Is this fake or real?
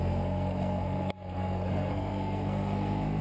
fake